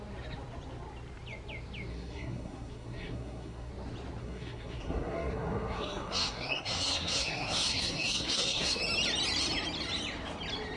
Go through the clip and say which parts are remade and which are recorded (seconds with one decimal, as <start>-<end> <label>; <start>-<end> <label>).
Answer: 0.0-1.9 recorded; 1.9-3.7 remade; 3.7-4.2 recorded; 4.2-8.8 remade; 8.8-10.8 recorded